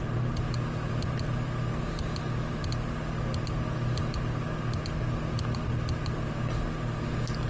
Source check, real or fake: real